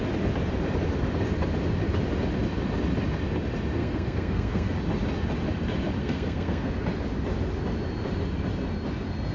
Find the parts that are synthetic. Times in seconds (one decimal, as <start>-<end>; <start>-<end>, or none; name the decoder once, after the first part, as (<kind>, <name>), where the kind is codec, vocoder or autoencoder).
3.8-4.7 (codec, SNAC); 6.0-6.7